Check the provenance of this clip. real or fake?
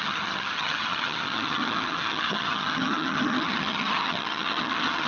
fake